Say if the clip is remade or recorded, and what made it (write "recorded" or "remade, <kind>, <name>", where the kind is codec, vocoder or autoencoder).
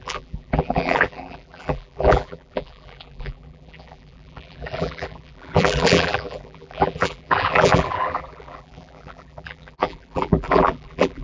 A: remade, vocoder, BigVGAN v2